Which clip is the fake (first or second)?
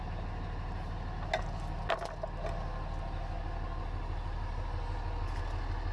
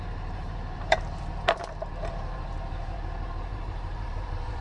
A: second